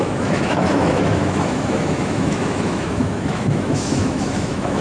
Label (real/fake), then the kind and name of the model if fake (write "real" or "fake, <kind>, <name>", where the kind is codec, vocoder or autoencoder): fake, autoencoder, DAC-VAE